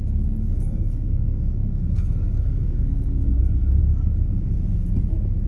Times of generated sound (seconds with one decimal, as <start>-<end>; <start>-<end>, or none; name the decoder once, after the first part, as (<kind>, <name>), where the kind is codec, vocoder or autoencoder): 0.5-3.8 (codec, SNAC)